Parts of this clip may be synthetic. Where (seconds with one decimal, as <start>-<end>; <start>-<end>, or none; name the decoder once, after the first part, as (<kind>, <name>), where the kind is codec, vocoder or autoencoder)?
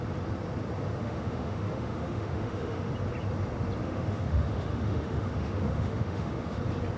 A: 1.0-2.9 (autoencoder, DAC-VAE); 3.8-6.6